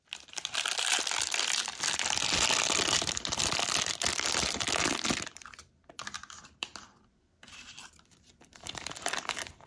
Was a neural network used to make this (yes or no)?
yes